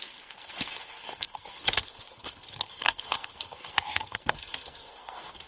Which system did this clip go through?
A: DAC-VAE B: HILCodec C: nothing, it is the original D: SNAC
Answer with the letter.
D